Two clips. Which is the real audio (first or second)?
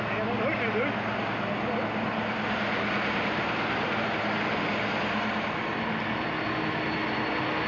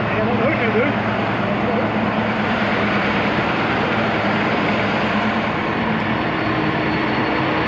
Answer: first